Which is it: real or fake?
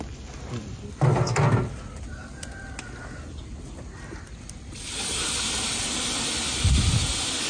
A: real